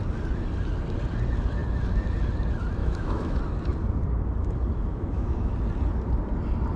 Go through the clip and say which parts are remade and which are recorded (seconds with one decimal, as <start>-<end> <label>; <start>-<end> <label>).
0.0-2.8 recorded; 2.8-3.4 remade; 3.4-4.9 recorded; 4.9-5.5 remade; 5.5-6.8 recorded